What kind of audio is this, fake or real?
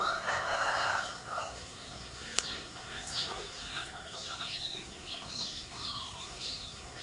fake